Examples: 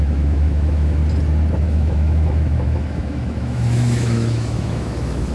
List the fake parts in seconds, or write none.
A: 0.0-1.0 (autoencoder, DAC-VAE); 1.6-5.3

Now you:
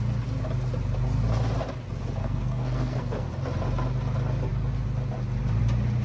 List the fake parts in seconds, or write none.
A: 2.2-3.3 (codec, SNAC)

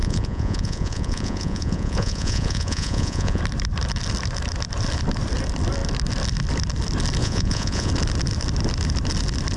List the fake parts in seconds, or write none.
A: 0.0-3.4 (vocoder, Vocos); 7.2-7.9

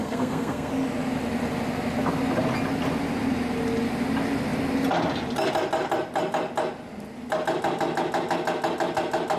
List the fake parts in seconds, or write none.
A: 0.0-0.7 (codec, SNAC)